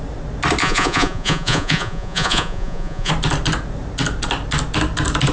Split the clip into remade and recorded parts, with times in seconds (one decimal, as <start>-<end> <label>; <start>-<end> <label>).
0.0-0.6 recorded; 0.6-3.1 remade; 3.1-5.3 recorded